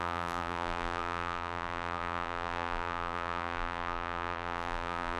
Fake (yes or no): yes